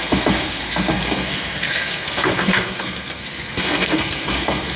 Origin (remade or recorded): remade